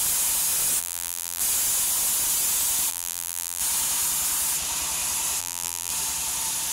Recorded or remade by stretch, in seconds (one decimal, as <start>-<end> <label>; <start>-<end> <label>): 0.0-0.8 recorded; 0.8-1.4 remade; 1.4-2.9 recorded; 2.9-3.6 remade; 3.6-5.4 recorded; 5.4-5.9 remade; 5.9-6.7 recorded

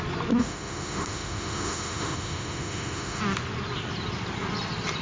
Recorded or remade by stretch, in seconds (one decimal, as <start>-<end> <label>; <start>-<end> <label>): 0.0-0.4 recorded; 0.4-3.2 remade; 3.2-5.0 recorded